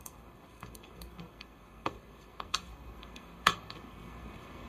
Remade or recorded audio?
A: remade